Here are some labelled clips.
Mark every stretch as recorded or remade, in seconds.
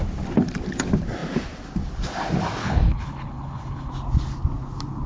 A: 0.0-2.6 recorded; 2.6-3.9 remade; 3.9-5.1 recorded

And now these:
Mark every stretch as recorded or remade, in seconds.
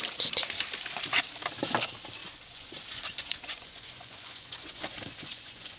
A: 0.0-2.2 recorded; 2.2-5.8 remade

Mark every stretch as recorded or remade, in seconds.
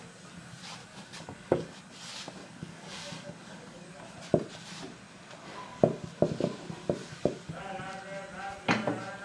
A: 0.0-0.8 recorded; 0.8-1.8 remade; 1.8-2.4 recorded; 2.4-3.9 remade; 3.9-5.4 recorded; 5.4-6.1 remade; 6.1-7.0 recorded; 7.0-7.8 remade; 7.8-9.2 recorded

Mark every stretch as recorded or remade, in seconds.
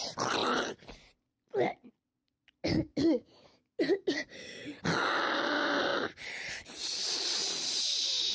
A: 0.0-2.9 recorded; 2.9-3.8 remade; 3.8-8.3 recorded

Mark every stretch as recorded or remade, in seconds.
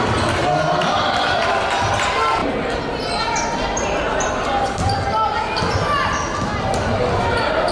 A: 0.0-7.7 recorded